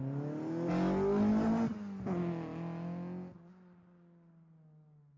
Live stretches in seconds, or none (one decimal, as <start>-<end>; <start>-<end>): 0.0-5.2